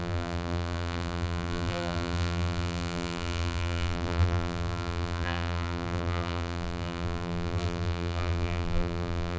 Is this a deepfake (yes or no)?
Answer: yes